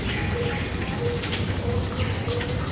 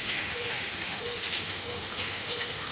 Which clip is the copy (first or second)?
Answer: second